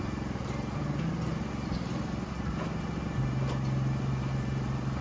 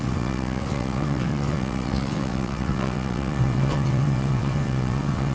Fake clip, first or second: second